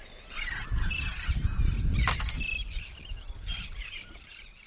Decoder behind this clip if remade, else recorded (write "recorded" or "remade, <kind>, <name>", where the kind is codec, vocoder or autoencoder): recorded